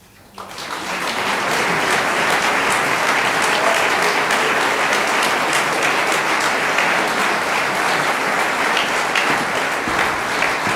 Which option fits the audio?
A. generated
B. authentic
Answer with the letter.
B